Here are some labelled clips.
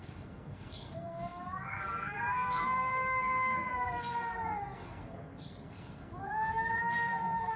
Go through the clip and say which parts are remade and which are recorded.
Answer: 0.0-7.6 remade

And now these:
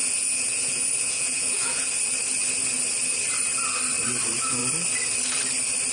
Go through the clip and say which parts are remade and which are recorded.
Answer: 0.0-1.9 remade; 1.9-5.9 recorded

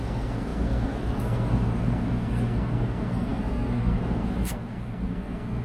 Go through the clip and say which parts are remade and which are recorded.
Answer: 0.0-5.6 remade

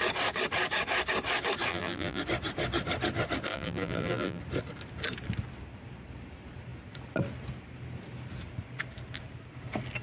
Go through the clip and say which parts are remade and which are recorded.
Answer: 0.0-1.7 recorded; 1.7-2.2 remade; 2.2-3.5 recorded; 3.5-4.4 remade; 4.4-10.0 recorded

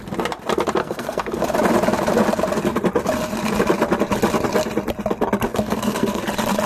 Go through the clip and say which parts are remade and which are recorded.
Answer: 0.0-0.8 recorded; 0.8-1.4 remade; 1.4-5.5 recorded; 5.5-6.2 remade; 6.2-6.7 recorded

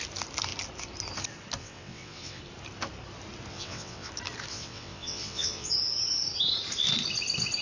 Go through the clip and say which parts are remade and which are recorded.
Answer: 0.0-1.6 recorded; 1.6-2.4 remade; 2.4-3.5 recorded; 3.5-4.1 remade; 4.1-4.5 recorded; 4.5-5.7 remade; 5.7-7.6 recorded

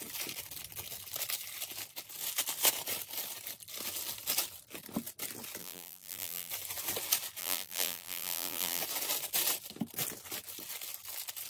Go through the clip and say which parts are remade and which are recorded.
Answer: 0.0-5.6 recorded; 5.6-6.5 remade; 6.5-7.4 recorded; 7.4-8.8 remade; 8.8-11.5 recorded